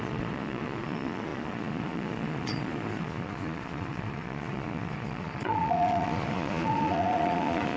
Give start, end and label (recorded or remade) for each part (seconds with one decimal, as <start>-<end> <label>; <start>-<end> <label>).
0.0-7.8 remade